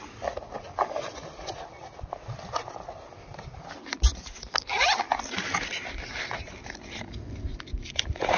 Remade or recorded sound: recorded